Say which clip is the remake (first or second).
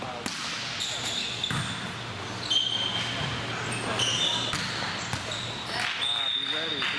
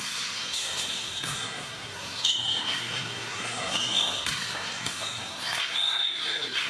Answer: second